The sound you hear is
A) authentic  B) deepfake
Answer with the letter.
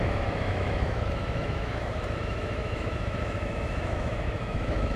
B